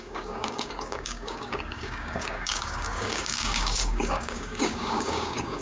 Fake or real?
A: fake